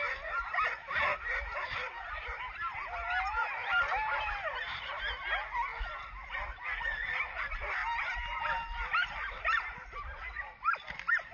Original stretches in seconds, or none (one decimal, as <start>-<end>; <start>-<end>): 0.0-11.3